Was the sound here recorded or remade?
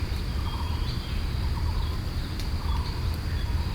recorded